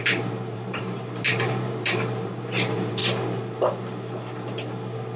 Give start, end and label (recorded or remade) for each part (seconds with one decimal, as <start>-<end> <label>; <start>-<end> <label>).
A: 0.0-3.0 remade; 3.0-5.2 recorded

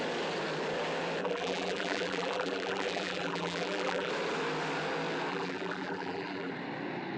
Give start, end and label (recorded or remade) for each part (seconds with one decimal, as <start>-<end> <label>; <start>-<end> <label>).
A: 0.0-1.2 recorded; 1.2-4.1 remade; 4.1-5.3 recorded; 5.3-6.5 remade; 6.5-7.2 recorded

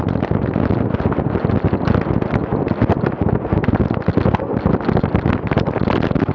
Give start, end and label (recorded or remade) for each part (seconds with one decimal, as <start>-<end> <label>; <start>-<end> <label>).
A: 0.0-6.3 recorded

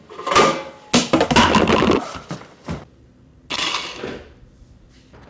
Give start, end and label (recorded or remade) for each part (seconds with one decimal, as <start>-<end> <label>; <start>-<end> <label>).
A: 0.0-5.3 recorded

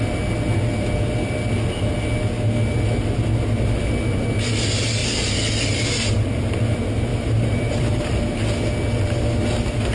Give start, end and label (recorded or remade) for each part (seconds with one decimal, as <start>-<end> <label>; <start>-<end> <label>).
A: 0.0-7.1 recorded; 7.1-8.2 remade; 8.2-9.9 recorded

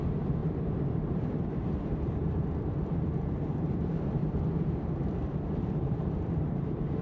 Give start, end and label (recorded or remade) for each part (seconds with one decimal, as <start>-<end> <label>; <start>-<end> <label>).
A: 0.0-7.0 remade